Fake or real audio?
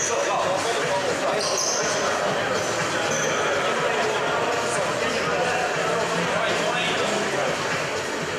real